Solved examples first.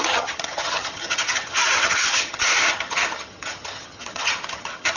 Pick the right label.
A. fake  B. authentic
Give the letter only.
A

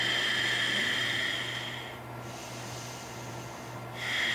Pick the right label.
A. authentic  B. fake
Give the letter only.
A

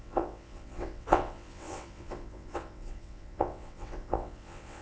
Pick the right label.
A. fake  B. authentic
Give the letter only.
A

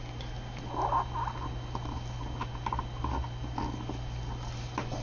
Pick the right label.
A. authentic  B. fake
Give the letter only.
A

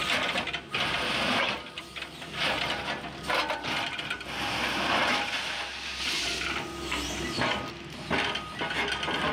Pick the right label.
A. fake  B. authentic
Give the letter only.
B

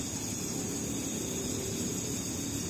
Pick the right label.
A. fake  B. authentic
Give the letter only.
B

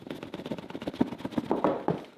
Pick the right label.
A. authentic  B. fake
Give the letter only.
A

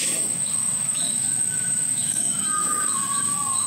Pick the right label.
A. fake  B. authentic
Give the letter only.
A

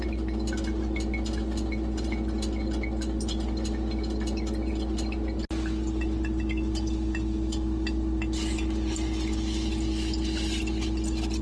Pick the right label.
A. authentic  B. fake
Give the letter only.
A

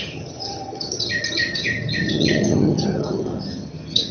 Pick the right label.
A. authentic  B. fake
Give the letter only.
B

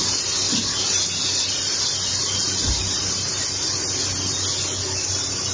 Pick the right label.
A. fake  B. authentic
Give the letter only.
B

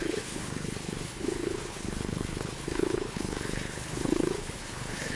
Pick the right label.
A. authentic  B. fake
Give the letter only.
B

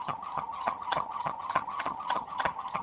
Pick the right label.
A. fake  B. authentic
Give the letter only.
A